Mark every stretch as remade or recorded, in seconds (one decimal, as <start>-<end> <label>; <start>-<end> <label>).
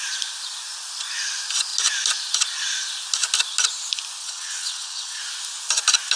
0.0-4.2 recorded; 4.2-5.2 remade; 5.2-6.2 recorded